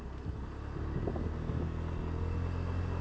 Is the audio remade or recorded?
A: recorded